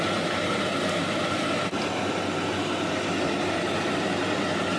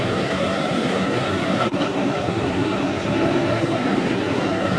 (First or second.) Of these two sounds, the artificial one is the second